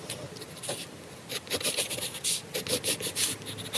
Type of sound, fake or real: real